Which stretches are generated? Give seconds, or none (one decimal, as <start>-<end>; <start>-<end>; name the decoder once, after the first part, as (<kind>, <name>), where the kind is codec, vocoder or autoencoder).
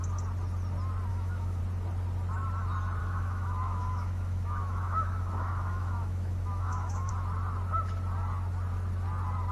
1.1-1.6 (autoencoder, DAC-VAE); 3.0-7.1